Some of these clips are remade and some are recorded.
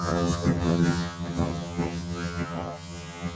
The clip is remade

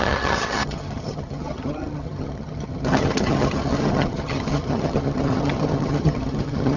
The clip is remade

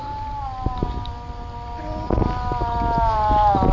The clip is recorded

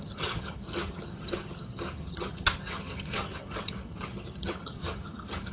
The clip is remade